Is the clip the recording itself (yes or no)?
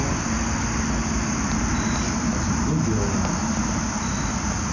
yes